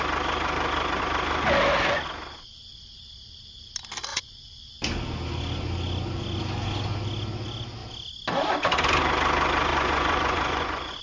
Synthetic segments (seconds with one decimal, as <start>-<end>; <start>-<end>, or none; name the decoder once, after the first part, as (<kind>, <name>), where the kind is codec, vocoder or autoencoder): 4.1-4.7 (vocoder, Vocos); 9.7-11.0